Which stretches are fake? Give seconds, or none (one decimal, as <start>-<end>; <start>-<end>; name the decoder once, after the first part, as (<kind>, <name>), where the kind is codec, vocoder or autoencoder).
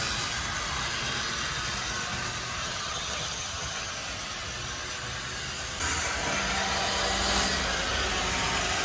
2.6-3.9 (vocoder, HiFi-GAN)